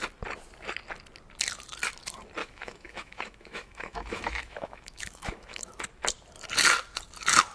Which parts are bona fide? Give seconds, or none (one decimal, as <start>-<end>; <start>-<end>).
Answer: 0.0-2.4; 5.8-7.5